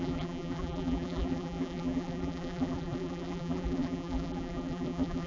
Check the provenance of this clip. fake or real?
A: fake